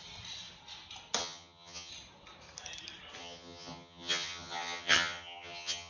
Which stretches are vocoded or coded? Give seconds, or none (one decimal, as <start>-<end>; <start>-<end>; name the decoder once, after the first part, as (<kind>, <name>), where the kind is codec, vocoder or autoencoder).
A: 1.2-1.9 (vocoder, HiFi-GAN); 3.2-5.9